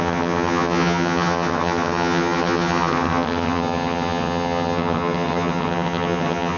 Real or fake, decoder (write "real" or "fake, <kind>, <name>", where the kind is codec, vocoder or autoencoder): fake, vocoder, HiFi-GAN